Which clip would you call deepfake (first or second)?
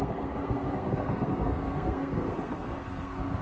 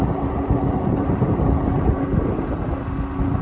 first